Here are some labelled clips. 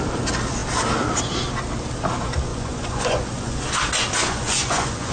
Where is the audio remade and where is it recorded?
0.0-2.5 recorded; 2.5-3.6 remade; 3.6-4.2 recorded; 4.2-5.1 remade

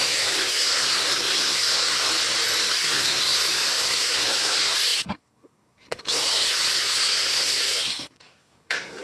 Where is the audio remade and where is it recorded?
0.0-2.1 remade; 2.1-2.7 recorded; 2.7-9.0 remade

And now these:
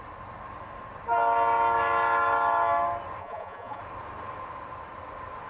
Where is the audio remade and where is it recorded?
0.0-3.2 recorded; 3.2-3.8 remade; 3.8-5.5 recorded

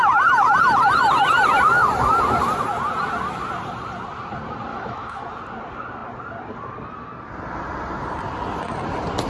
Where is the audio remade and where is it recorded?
0.0-4.7 recorded; 4.7-5.2 remade; 5.2-9.3 recorded

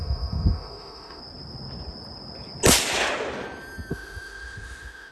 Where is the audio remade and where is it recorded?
0.0-1.2 remade; 1.2-3.9 recorded; 3.9-5.1 remade